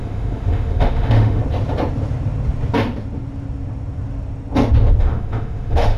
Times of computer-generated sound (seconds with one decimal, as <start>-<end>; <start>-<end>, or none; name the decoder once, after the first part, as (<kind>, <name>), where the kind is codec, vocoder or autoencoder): 0.0-1.4 (autoencoder, DAC-VAE); 5.0-6.0